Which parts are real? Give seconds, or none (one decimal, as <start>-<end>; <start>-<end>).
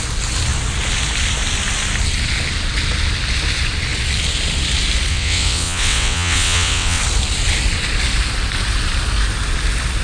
0.0-5.1; 7.0-10.0